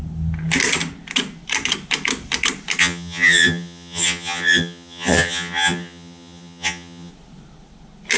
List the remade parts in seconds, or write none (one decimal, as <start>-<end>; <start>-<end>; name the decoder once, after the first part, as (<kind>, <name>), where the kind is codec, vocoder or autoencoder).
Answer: 2.8-7.1 (vocoder, HiFi-GAN)